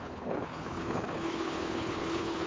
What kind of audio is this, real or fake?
fake